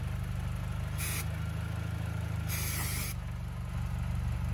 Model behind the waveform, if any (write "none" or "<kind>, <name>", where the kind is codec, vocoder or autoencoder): none